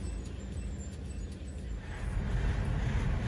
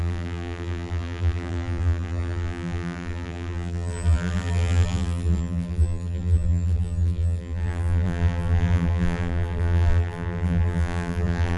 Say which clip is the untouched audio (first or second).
first